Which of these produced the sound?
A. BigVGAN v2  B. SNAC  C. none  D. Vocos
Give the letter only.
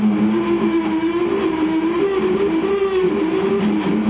C